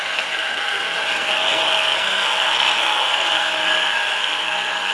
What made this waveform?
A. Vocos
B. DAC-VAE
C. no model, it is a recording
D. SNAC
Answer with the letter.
D